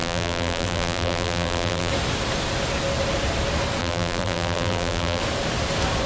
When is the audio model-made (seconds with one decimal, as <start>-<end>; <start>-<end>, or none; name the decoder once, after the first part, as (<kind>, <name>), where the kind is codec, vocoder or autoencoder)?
0.0-1.9 (vocoder, BigVGAN v2); 3.8-5.2